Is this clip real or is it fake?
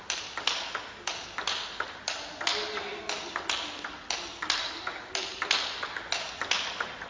real